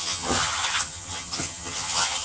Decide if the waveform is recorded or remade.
remade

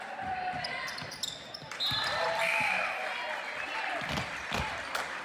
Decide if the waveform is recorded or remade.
remade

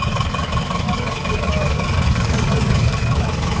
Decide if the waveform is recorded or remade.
remade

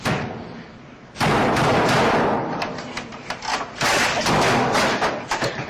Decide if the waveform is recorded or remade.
recorded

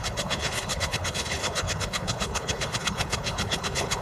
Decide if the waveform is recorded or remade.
remade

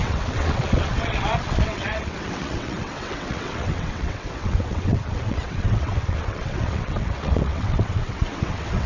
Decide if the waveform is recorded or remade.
remade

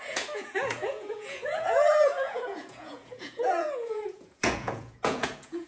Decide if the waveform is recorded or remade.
remade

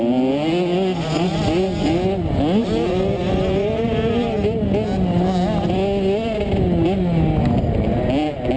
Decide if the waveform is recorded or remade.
recorded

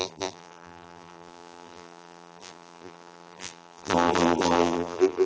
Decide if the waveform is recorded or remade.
remade